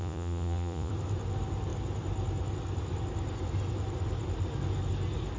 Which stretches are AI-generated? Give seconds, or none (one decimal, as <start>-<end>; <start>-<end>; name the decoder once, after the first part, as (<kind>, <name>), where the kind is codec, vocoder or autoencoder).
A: 0.0-0.9 (vocoder, Vocos)